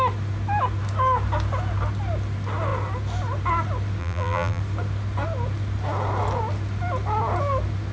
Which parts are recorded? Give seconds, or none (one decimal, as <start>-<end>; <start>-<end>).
0.0-4.0; 4.6-7.9